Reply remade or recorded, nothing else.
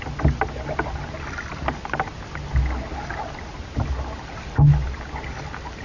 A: recorded